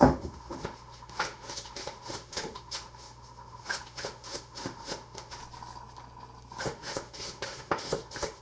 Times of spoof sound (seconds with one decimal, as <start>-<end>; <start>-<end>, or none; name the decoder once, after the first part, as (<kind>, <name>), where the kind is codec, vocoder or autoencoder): 0.0-5.4 (autoencoder, DAC-VAE); 6.6-8.4